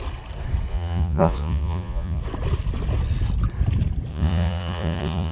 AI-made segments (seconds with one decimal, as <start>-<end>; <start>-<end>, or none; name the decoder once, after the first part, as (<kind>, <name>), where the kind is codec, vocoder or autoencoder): 0.7-2.2 (vocoder, Vocos); 4.1-5.3